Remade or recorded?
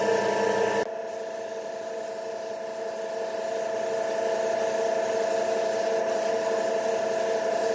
recorded